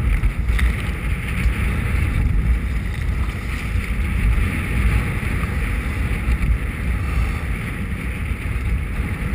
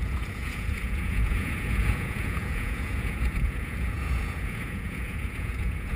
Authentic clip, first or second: first